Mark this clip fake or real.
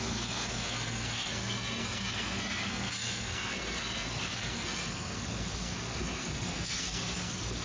fake